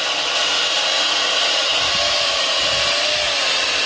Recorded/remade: recorded